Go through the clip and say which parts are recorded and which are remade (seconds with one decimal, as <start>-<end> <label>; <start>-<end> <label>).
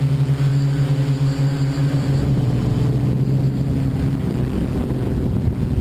0.0-4.1 recorded; 4.1-4.7 remade; 4.7-5.8 recorded